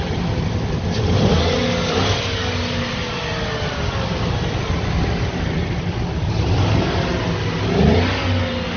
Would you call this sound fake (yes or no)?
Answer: no